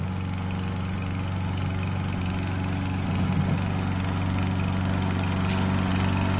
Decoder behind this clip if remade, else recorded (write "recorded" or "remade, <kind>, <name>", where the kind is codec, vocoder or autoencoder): recorded